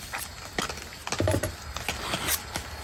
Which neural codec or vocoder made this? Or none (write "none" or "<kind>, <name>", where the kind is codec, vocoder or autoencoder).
none